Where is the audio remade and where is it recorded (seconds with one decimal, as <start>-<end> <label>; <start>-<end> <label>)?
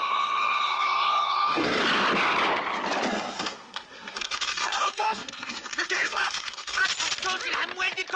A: 0.0-1.8 remade; 1.8-3.1 recorded; 3.1-6.8 remade; 6.8-8.2 recorded